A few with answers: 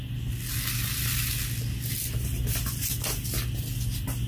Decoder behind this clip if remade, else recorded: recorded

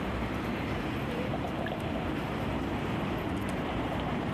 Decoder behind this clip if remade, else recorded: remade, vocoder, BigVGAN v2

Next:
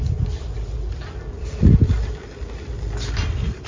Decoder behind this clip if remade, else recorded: remade, vocoder, BigVGAN v2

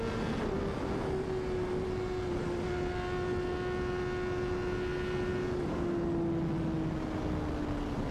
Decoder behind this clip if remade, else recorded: recorded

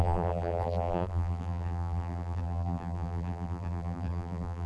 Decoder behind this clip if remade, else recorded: remade, vocoder, BigVGAN v2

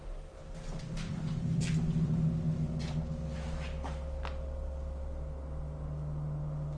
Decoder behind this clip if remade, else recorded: recorded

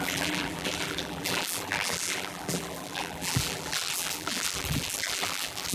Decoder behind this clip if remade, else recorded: remade, vocoder, BigVGAN v2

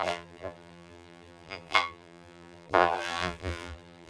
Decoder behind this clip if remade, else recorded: remade, vocoder, BigVGAN v2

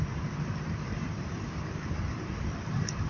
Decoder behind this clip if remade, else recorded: remade, vocoder, BigVGAN v2